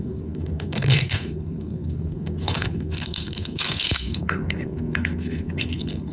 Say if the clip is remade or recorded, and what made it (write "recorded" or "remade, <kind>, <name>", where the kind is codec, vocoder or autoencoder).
remade, codec, SNAC